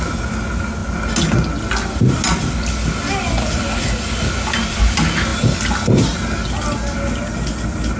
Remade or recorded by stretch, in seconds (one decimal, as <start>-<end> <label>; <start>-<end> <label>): 0.0-8.0 recorded